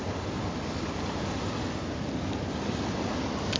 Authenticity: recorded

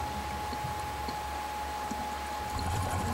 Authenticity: recorded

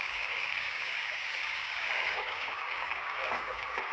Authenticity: remade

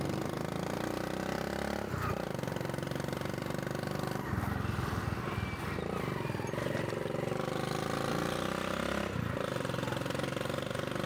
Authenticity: recorded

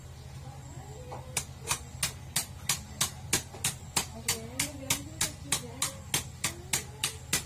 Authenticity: recorded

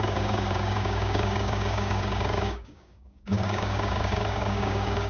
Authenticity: remade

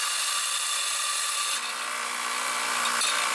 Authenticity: recorded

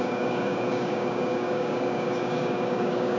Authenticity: remade